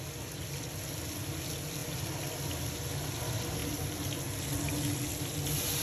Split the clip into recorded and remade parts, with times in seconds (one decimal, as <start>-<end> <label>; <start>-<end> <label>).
0.0-5.8 recorded